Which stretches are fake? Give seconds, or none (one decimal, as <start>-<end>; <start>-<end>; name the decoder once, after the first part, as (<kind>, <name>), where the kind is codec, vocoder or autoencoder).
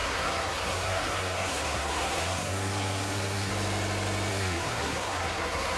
0.0-3.5 (codec, SNAC); 4.3-5.8